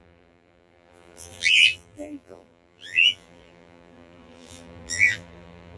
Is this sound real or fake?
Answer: fake